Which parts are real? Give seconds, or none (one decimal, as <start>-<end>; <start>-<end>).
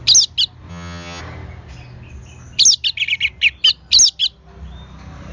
0.0-0.7; 1.2-5.3